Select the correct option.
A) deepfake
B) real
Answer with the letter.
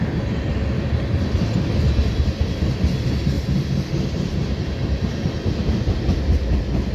B